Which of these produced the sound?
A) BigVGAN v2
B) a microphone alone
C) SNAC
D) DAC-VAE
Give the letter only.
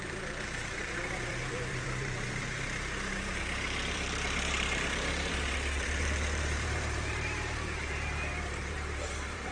A